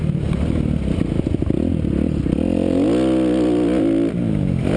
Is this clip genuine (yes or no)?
yes